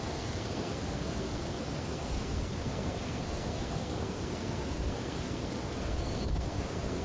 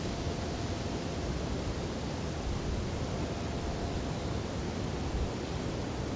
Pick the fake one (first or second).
first